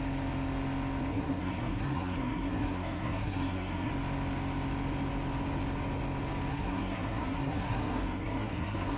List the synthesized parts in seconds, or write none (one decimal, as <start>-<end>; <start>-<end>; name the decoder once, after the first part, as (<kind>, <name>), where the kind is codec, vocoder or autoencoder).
1.1-3.9 (codec, SNAC); 6.5-9.0